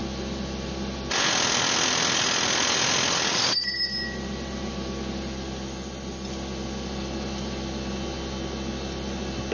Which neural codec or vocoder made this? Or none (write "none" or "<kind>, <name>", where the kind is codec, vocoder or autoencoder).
none